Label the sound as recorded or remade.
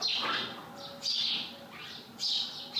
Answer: recorded